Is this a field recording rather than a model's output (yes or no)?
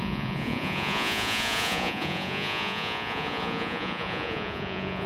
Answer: no